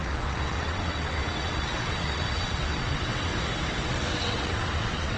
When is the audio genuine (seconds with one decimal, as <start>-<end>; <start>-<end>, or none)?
3.3-3.8